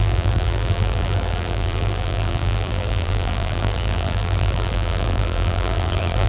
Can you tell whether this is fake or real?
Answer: fake